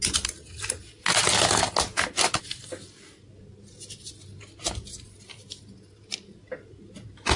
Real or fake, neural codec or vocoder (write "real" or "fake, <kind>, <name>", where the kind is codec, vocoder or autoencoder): real